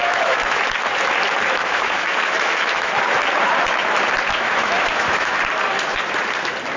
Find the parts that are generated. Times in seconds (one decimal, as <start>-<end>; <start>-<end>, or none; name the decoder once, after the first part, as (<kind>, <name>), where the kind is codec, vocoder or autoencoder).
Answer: 0.0-0.6 (autoencoder, DAC-VAE); 1.6-2.9; 4.3-5.4